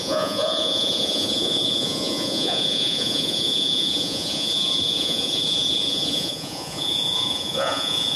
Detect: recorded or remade remade